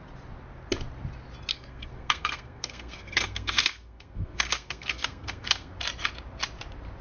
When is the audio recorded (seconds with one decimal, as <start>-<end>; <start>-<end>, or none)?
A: 0.0-1.5; 5.7-7.0